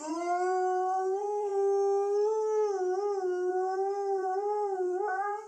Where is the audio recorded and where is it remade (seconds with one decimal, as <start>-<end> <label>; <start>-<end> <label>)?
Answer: 0.0-1.5 remade; 1.5-3.5 recorded; 3.5-5.5 remade